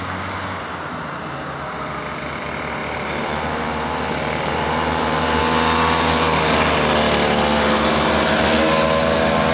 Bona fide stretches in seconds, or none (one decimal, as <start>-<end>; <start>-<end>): 0.0-2.8; 5.4-9.5